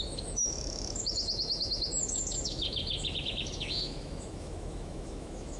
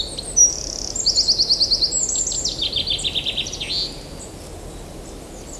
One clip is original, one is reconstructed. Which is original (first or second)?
second